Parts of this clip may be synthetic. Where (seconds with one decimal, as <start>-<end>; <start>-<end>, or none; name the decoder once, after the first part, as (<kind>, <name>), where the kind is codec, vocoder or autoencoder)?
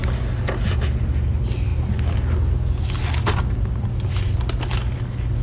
none